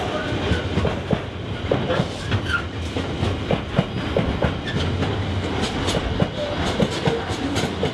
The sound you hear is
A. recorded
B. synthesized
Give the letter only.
A